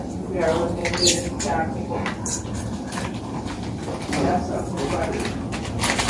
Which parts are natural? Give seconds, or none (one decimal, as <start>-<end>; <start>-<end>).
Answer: 0.0-0.8; 4.5-6.1